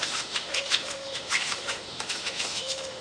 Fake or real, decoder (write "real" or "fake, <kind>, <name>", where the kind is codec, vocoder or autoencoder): fake, autoencoder, DAC-VAE